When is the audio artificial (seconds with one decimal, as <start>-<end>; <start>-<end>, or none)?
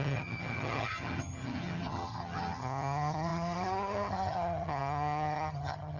0.0-6.0